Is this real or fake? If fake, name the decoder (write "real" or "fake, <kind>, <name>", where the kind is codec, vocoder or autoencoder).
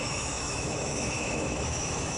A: fake, autoencoder, DAC-VAE